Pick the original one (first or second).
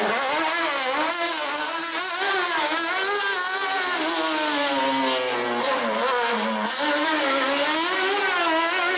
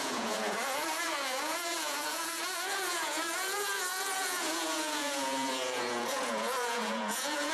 first